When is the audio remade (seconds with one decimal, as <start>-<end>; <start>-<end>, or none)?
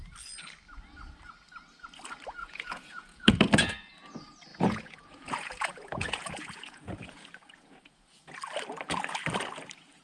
2.4-3.4; 4.5-8.2